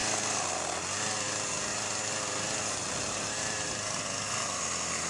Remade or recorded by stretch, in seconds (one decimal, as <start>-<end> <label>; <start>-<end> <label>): 0.0-5.1 recorded